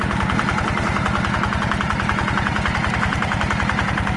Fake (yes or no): yes